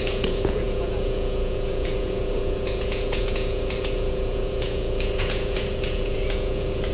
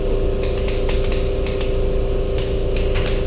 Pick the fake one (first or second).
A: first